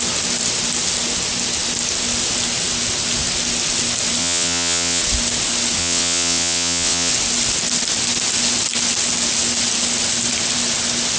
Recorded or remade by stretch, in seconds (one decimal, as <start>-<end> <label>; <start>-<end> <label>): 0.0-4.2 recorded; 4.2-5.0 remade; 5.0-5.8 recorded; 5.8-7.1 remade; 7.1-11.2 recorded